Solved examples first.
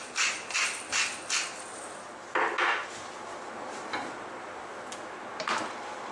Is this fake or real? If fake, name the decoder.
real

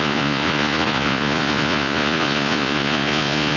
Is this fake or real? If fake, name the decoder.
fake, vocoder, Vocos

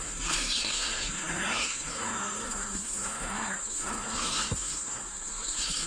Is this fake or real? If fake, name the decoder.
fake, codec, SNAC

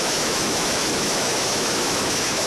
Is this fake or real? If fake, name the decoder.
fake, autoencoder, DAC-VAE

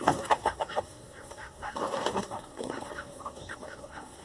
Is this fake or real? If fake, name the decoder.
fake, codec, SNAC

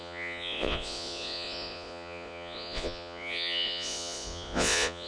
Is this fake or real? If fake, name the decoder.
fake, vocoder, Vocos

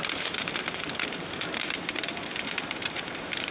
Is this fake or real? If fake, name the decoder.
fake, vocoder, BigVGAN v2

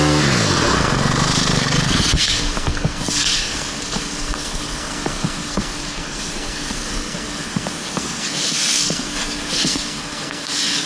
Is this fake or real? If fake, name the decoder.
fake, codec, SNAC